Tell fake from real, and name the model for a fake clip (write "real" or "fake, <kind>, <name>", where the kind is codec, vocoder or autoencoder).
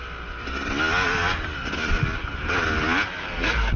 real